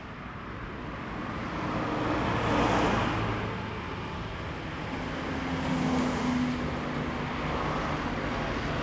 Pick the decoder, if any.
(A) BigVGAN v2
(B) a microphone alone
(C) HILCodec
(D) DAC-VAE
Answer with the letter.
B